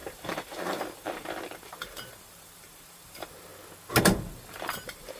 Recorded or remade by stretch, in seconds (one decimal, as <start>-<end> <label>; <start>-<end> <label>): 0.0-3.5 remade; 3.5-4.0 recorded; 4.0-5.2 remade